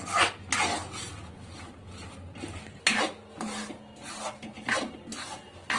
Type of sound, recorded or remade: recorded